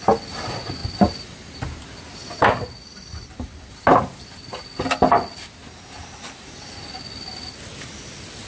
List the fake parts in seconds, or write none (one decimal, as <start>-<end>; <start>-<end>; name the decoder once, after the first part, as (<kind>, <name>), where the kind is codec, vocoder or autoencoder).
none